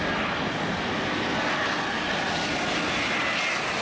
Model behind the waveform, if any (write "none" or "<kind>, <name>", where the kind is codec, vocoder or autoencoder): none